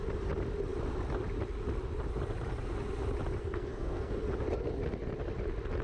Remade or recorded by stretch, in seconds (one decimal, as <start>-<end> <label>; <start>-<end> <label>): 0.0-3.4 recorded; 3.4-4.2 remade; 4.2-5.8 recorded